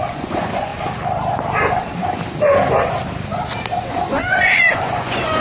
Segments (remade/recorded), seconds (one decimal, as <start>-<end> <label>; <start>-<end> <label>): 0.0-0.7 remade; 0.7-3.9 recorded; 3.9-5.4 remade